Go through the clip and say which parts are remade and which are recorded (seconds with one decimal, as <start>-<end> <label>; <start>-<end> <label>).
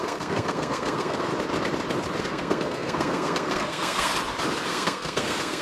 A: 0.0-1.3 remade; 1.3-2.2 recorded; 2.2-4.1 remade; 4.1-4.7 recorded; 4.7-5.6 remade